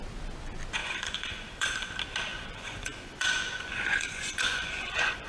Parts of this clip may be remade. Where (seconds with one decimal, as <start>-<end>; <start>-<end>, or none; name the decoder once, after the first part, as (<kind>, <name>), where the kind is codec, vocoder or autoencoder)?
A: 0.8-1.9 (vocoder, Vocos); 2.3-5.3